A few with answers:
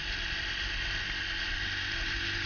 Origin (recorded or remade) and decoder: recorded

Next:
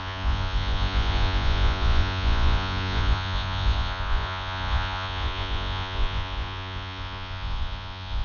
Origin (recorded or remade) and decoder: remade, vocoder, Vocos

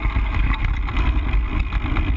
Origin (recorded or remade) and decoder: recorded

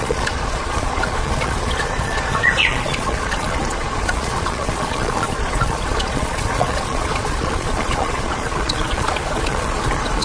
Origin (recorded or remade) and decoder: remade, vocoder, Vocos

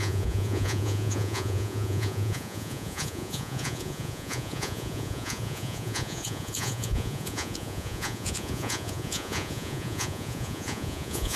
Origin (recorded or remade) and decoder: remade, vocoder, Vocos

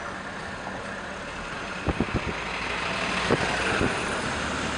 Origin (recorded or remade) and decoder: recorded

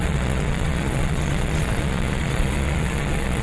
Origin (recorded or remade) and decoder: remade, vocoder, Vocos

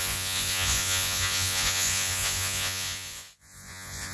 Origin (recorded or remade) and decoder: remade, vocoder, Vocos